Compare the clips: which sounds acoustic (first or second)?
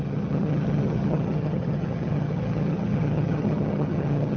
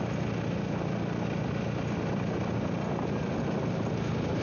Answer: second